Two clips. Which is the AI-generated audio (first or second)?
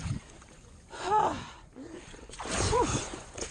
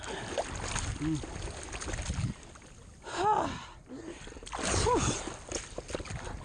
first